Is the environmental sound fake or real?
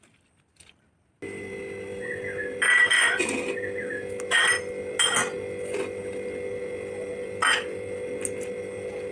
real